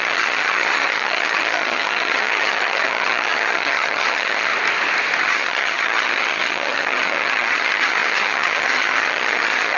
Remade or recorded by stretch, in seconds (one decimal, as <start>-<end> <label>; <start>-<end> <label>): 0.0-4.5 remade; 4.5-5.2 recorded; 5.2-9.8 remade